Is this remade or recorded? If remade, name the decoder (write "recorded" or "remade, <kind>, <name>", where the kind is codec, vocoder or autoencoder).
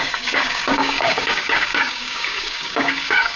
remade, codec, DAC